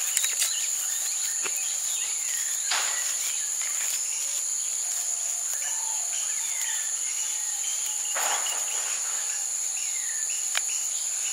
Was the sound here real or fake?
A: real